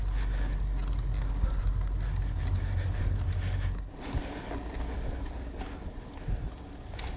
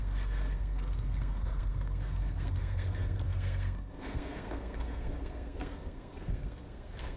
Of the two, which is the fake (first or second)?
second